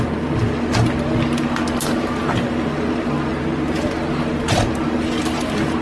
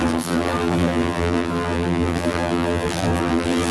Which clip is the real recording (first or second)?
first